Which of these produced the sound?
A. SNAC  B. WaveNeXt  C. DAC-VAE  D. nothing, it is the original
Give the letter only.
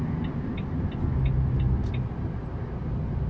D